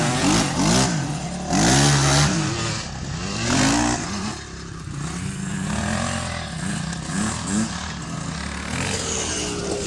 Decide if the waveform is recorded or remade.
recorded